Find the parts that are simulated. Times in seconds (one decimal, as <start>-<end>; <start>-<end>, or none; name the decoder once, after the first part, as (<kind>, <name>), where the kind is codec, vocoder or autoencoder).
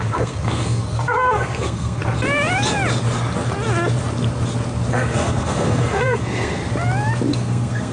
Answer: 0.0-2.0 (codec, SNAC); 4.9-6.6; 7.3-7.9